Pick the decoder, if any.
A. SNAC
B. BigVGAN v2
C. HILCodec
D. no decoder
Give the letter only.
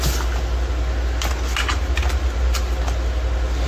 D